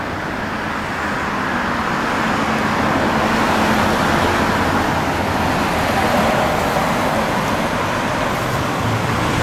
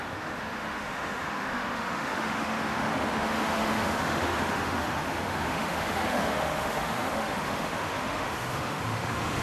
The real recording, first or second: first